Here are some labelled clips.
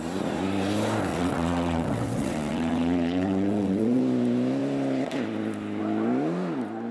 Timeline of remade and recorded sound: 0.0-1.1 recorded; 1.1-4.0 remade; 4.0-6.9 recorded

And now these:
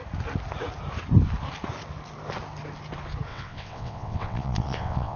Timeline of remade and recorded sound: 0.0-3.3 recorded; 3.3-5.2 remade

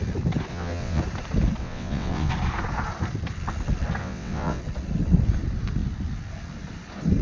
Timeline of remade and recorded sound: 0.0-0.5 recorded; 0.5-1.0 remade; 1.0-1.6 recorded; 1.6-2.3 remade; 2.3-4.0 recorded; 4.0-4.6 remade; 4.6-7.2 recorded